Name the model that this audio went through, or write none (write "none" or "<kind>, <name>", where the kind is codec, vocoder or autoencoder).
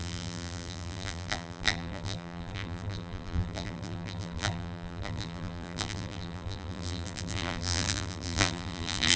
vocoder, BigVGAN v2